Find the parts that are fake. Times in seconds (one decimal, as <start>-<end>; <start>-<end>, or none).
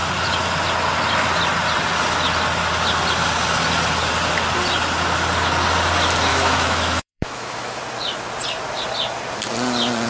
6.3-7.8